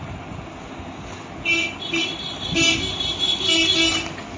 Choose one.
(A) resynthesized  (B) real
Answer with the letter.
B